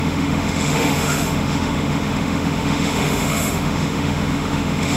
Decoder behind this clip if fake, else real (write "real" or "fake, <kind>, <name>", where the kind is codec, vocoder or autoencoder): fake, autoencoder, DAC-VAE